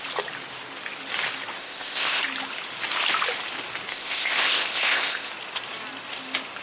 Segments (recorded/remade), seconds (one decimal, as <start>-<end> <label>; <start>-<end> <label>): 0.0-1.6 recorded; 1.6-2.2 remade; 2.2-3.9 recorded; 3.9-5.3 remade; 5.3-6.6 recorded